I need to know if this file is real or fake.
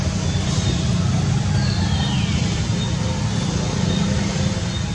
real